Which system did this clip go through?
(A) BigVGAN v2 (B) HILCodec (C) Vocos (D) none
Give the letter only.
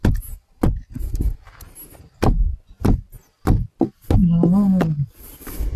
D